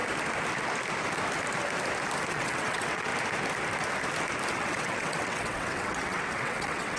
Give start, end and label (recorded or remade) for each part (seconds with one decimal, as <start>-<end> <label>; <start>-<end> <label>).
0.0-2.3 recorded; 2.3-3.1 remade; 3.1-4.5 recorded; 4.5-7.0 remade